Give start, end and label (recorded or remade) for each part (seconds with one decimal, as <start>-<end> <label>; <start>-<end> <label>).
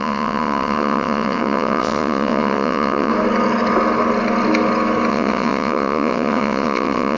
0.0-3.1 remade; 3.1-5.1 recorded; 5.1-7.2 remade